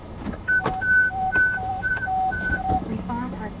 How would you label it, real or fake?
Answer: fake